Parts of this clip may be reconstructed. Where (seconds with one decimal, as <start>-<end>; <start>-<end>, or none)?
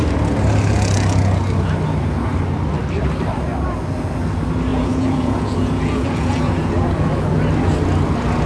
4.7-7.4